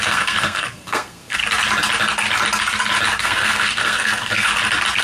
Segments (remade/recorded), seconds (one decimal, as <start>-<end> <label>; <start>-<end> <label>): 0.0-1.4 remade; 1.4-3.2 recorded; 3.2-4.5 remade; 4.5-5.0 recorded